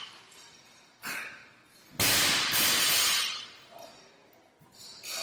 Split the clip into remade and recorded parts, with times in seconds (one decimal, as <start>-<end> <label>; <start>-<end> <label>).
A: 0.0-1.4 remade; 1.4-4.5 recorded; 4.5-5.2 remade